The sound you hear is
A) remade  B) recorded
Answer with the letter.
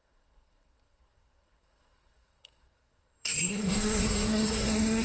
A